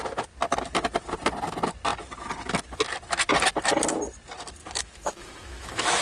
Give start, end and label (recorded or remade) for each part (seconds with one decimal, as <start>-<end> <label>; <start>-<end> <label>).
0.0-4.6 recorded; 4.6-6.0 remade